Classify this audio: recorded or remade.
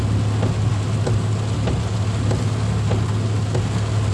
recorded